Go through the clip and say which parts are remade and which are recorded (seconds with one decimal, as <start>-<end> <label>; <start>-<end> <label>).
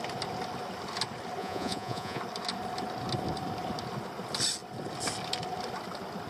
0.0-1.4 recorded; 1.4-2.2 remade; 2.2-6.3 recorded